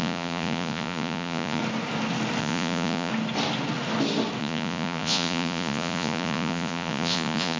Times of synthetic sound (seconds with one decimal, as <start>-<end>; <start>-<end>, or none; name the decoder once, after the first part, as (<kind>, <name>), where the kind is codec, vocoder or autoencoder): 0.0-1.6 (vocoder, Vocos); 2.4-3.1; 4.4-7.6